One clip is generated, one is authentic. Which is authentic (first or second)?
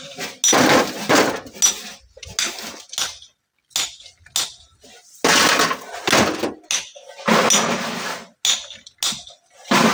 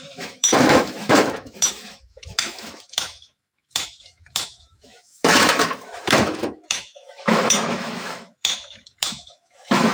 first